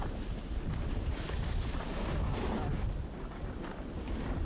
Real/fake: real